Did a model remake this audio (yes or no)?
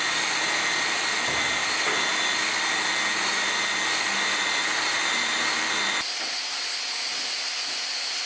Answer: no